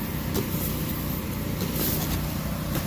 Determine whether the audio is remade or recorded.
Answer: recorded